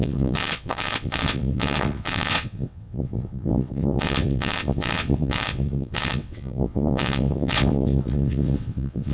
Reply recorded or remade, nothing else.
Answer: remade